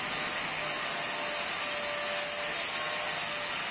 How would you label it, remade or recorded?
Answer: recorded